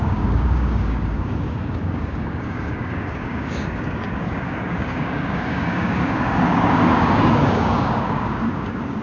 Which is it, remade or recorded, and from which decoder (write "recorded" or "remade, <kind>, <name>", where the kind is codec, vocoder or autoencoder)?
remade, codec, DAC